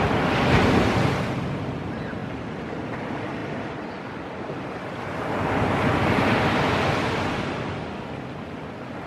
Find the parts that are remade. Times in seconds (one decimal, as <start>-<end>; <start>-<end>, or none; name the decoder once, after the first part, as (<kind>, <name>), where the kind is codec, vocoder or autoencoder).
none